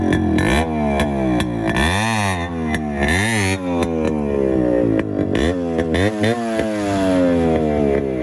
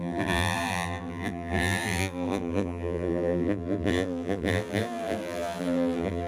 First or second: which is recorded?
first